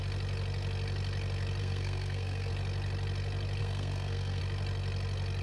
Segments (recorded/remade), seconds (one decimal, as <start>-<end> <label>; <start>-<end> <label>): 0.0-1.6 recorded; 1.6-2.5 remade; 2.5-3.6 recorded; 3.6-4.4 remade; 4.4-5.4 recorded